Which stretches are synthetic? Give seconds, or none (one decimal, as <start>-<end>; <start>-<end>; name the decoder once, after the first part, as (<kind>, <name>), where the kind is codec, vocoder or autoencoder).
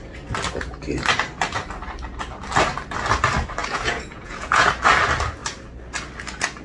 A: 3.6-4.7 (vocoder, Vocos)